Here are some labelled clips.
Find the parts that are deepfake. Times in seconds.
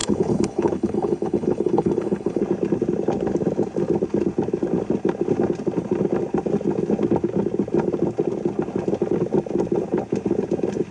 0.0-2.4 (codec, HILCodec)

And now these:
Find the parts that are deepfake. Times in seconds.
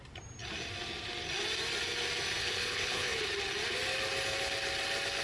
2.4-3.3 (codec, HILCodec)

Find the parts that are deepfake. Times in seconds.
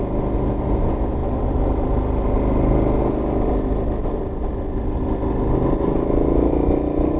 none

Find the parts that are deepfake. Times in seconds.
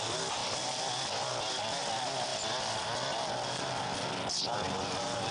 none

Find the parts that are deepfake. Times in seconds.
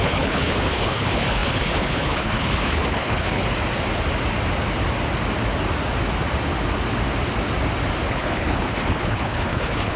0.0-3.4 (codec, HILCodec); 8.1-10.0